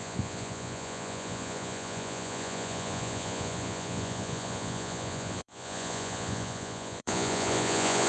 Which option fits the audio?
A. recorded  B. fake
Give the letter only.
B